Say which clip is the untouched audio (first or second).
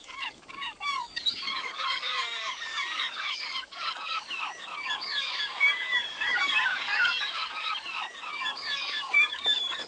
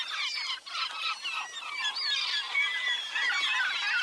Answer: second